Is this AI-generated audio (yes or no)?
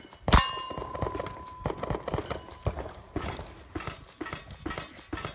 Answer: no